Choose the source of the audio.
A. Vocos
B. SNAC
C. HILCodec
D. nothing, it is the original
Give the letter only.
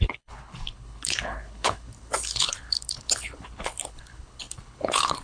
C